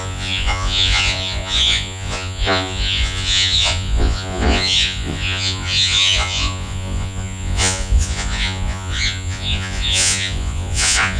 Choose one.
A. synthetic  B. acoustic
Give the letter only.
A